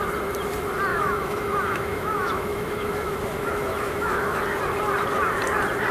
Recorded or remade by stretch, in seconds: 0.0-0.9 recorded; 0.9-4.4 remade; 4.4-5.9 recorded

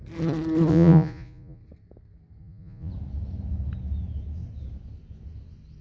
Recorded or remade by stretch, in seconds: 0.0-0.7 recorded; 0.7-1.6 remade; 1.6-2.4 recorded; 2.4-2.9 remade; 2.9-5.8 recorded

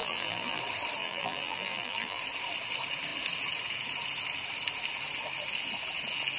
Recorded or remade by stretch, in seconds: 0.0-0.6 remade; 0.6-1.0 recorded; 1.0-2.2 remade; 2.2-6.4 recorded

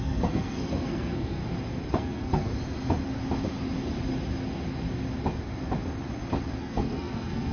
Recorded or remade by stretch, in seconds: 0.0-1.4 remade; 1.4-1.9 recorded; 1.9-2.5 remade; 2.5-6.6 recorded; 6.6-7.5 remade

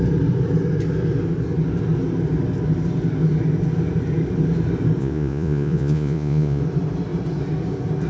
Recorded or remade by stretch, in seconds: 0.0-5.0 recorded; 5.0-6.6 remade; 6.6-8.1 recorded